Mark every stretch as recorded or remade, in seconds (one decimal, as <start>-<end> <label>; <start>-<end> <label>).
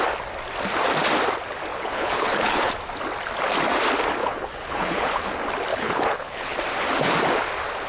0.0-1.7 recorded; 1.7-2.7 remade; 2.7-4.2 recorded; 4.2-5.3 remade; 5.3-5.7 recorded; 5.7-6.6 remade; 6.6-7.9 recorded